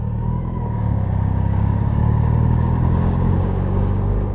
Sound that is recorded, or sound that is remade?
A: remade